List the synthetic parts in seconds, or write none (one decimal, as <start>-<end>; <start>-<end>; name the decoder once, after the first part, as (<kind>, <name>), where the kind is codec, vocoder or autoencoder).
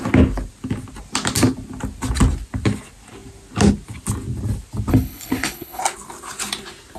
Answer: 4.9-5.8 (codec, HILCodec)